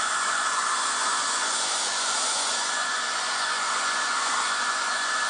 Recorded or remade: remade